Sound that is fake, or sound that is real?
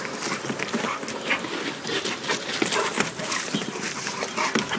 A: real